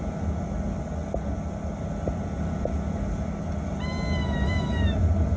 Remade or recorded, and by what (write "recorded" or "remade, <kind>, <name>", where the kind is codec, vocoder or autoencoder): recorded